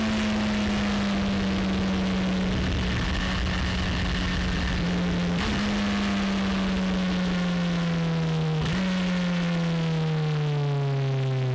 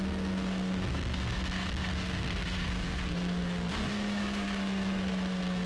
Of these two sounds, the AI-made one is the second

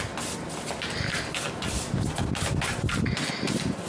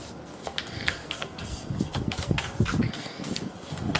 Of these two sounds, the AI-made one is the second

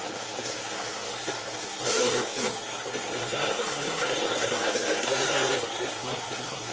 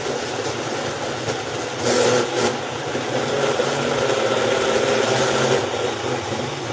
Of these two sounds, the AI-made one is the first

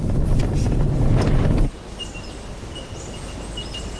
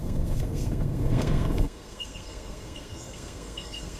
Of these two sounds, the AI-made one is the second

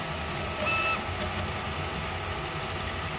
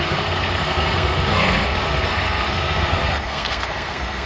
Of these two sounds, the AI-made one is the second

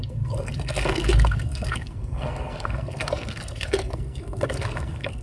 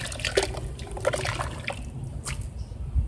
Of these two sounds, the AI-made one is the first